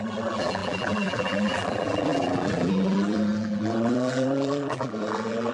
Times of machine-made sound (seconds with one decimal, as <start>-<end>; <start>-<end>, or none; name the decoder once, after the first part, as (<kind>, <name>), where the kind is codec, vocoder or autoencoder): 0.0-5.5 (vocoder, BigVGAN v2)